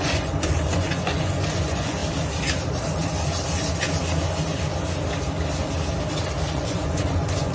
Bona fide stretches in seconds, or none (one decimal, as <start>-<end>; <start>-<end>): 2.0-6.5